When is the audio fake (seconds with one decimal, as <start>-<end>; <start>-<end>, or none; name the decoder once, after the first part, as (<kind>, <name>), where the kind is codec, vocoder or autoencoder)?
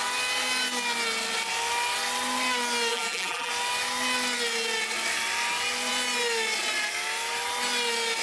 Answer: 2.9-3.5 (vocoder, BigVGAN v2)